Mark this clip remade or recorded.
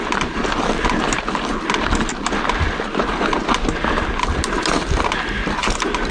recorded